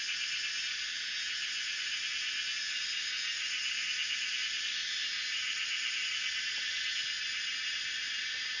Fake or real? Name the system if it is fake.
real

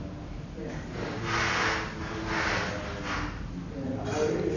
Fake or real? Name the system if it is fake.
real